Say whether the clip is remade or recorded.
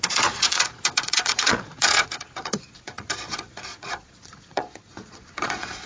remade